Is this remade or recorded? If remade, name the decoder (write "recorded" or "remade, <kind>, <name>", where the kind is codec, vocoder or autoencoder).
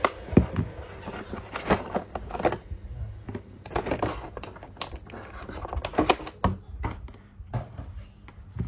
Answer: recorded